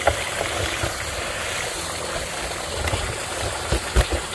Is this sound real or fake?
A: real